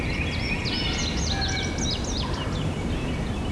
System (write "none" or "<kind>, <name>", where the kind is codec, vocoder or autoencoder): none